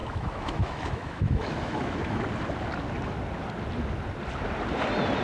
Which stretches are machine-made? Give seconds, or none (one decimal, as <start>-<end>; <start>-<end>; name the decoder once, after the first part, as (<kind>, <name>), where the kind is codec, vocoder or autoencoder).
0.0-2.2 (autoencoder, DAC-VAE)